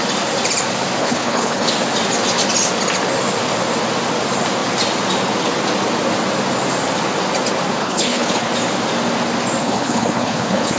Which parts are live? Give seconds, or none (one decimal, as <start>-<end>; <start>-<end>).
0.0-1.0; 1.7-7.8; 8.5-9.6